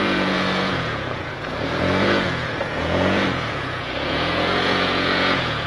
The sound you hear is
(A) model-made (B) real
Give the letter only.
A